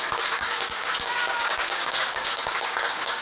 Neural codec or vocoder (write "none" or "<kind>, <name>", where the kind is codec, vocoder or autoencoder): codec, DAC